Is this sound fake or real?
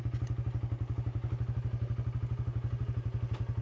real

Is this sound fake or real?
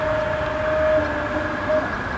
real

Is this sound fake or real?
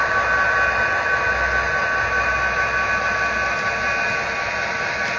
real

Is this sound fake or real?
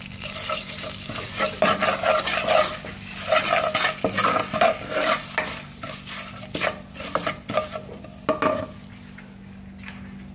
real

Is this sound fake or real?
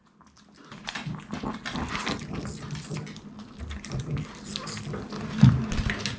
real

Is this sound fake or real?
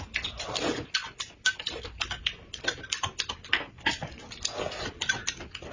real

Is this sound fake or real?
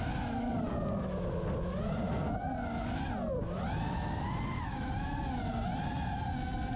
real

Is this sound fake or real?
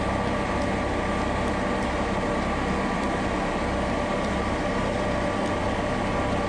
real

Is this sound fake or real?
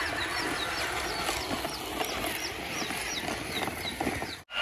real